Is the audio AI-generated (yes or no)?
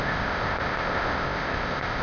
yes